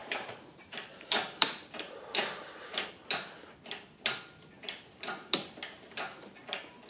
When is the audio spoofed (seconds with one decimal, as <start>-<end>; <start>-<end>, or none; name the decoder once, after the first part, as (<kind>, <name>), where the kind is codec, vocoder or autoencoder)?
0.0-3.0 (vocoder, BigVGAN v2); 6.3-6.9